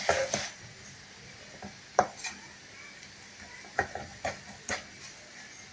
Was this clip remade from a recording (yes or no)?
no